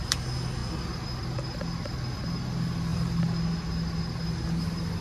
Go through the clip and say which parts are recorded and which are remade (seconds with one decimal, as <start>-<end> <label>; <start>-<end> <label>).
0.0-5.0 recorded